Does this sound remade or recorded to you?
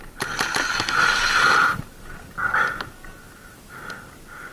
recorded